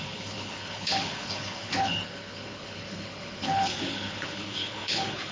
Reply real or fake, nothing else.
fake